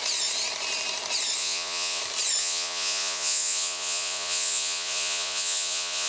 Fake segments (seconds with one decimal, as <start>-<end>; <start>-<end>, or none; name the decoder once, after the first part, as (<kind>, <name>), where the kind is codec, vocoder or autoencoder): 1.4-2.0 (vocoder, Vocos); 2.4-6.1